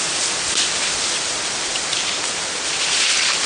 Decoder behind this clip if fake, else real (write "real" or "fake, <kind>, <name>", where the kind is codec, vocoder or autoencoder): real